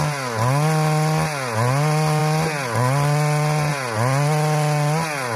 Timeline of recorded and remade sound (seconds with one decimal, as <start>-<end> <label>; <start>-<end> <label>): 0.0-5.4 recorded